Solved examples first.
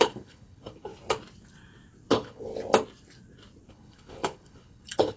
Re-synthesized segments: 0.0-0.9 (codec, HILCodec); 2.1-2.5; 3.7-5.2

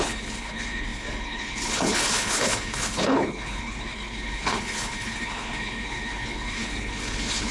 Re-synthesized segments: 0.0-7.5 (codec, HILCodec)

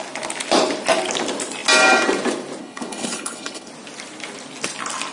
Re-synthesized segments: 2.6-3.7 (codec, HILCodec)

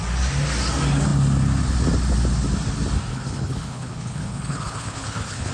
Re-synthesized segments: 3.1-5.5 (codec, HILCodec)

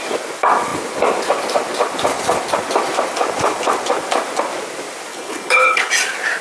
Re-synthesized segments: 5.1-5.9 (codec, HILCodec)

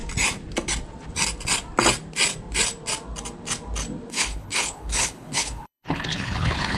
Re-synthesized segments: 4.1-6.8 (codec, HILCodec)

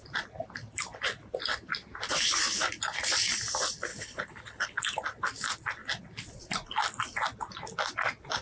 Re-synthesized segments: 3.9-4.8 (codec, HILCodec)

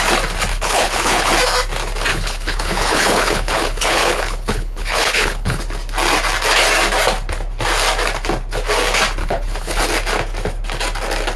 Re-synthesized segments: 0.5-1.3 (codec, HILCodec); 2.1-5.6; 9.2-9.8